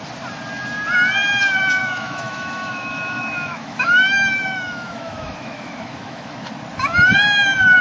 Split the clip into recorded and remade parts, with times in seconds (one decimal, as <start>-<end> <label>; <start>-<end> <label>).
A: 0.0-1.8 recorded; 1.8-6.5 remade; 6.5-7.8 recorded